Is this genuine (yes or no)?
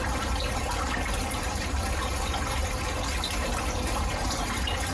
no